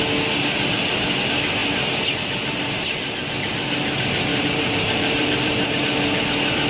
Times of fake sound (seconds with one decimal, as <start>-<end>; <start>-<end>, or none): 4.3-5.8